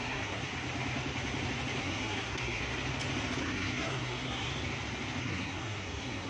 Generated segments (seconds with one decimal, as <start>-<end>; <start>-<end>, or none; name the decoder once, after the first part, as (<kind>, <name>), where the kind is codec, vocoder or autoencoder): 0.0-0.5 (codec, SNAC); 1.8-2.6; 3.4-4.5; 5.2-6.3